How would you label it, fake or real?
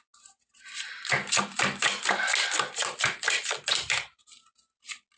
real